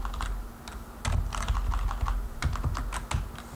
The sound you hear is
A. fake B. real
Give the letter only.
B